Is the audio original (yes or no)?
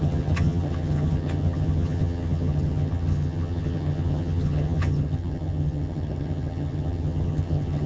no